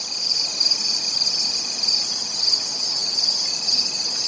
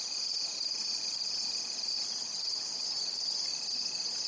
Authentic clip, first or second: first